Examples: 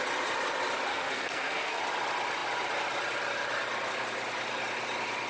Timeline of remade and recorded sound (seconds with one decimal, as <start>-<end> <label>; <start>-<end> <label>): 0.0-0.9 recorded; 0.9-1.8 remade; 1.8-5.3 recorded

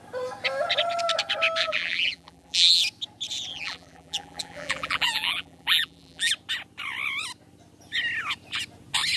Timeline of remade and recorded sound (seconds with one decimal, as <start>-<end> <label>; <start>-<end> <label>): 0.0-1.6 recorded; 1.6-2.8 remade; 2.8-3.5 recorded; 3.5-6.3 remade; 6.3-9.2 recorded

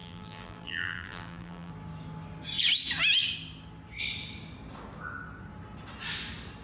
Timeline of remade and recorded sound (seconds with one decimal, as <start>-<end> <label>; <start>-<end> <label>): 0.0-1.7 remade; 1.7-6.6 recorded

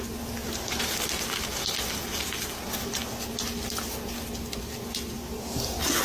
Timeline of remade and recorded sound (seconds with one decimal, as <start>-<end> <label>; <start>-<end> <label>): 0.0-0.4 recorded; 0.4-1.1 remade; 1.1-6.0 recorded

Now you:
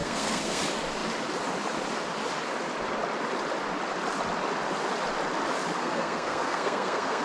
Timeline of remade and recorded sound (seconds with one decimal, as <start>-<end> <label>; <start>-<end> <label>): 0.0-0.6 remade; 0.6-5.8 recorded; 5.8-7.2 remade

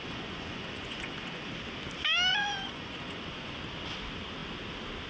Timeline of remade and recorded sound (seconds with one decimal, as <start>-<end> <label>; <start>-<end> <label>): 0.0-1.5 remade; 1.5-2.3 recorded; 2.3-3.6 remade; 3.6-5.1 recorded

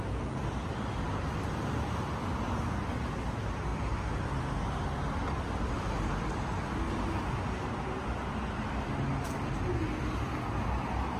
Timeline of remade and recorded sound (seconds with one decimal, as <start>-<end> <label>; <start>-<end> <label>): 0.0-11.2 recorded

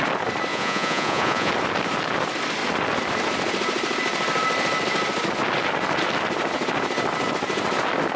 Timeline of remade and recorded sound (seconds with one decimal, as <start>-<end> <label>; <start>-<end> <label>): 0.0-0.5 recorded; 0.5-1.5 remade; 1.5-8.2 recorded